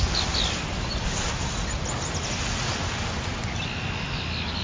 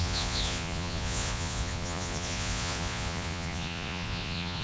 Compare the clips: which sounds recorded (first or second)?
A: first